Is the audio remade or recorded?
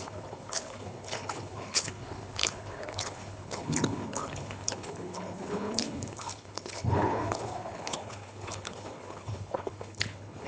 remade